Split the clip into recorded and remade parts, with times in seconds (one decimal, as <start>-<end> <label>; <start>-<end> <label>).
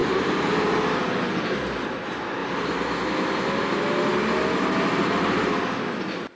0.0-4.1 recorded; 4.1-6.4 remade